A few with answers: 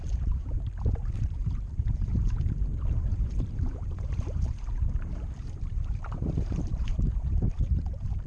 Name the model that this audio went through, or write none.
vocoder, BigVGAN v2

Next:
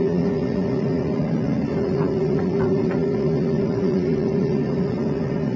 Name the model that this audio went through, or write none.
vocoder, Vocos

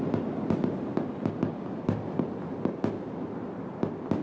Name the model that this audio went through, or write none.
none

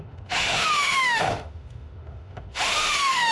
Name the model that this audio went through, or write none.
autoencoder, DAC-VAE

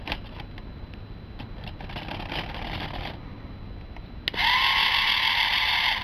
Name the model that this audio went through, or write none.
none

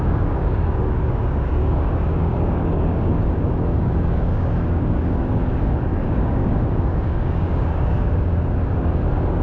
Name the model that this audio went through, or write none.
codec, DAC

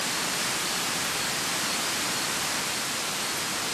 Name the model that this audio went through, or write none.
none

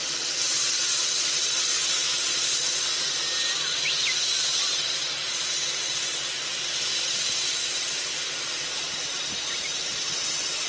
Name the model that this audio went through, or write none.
none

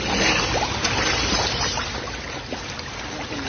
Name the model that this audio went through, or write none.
none